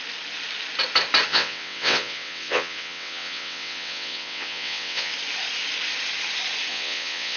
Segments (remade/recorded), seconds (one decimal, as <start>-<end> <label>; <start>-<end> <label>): 0.0-1.3 recorded; 1.3-5.1 remade; 5.1-6.7 recorded; 6.7-7.4 remade